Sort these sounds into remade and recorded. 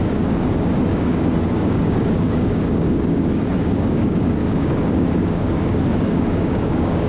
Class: remade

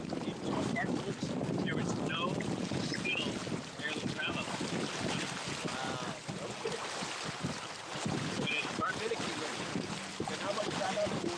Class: recorded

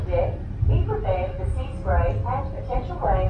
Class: recorded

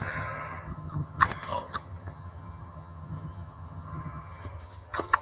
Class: remade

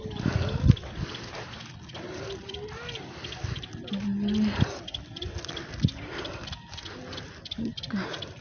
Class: recorded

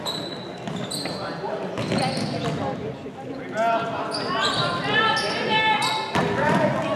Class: recorded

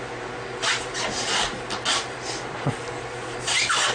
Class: recorded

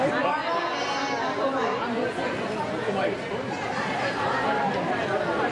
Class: recorded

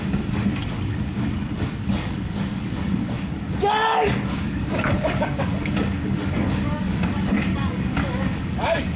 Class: remade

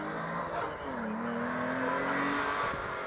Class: recorded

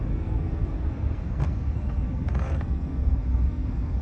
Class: remade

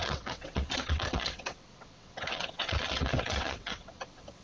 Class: remade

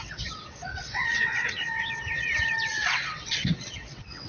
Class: remade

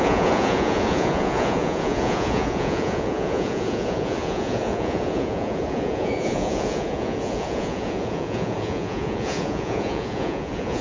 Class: remade